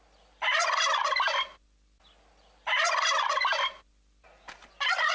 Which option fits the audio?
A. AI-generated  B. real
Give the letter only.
B